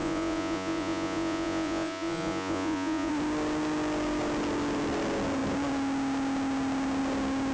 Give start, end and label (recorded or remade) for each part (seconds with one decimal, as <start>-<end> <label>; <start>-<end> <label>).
0.0-3.1 remade; 3.1-7.5 recorded